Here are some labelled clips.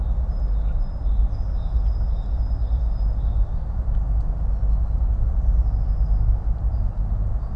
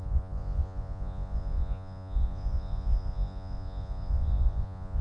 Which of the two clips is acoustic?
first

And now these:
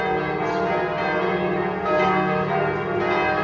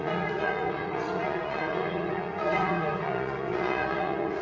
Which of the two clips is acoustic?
first